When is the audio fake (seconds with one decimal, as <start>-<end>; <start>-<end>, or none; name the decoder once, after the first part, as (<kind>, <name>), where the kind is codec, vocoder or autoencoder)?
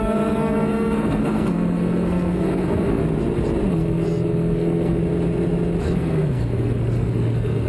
0.0-3.0 (codec, SNAC); 3.7-5.0; 5.8-7.7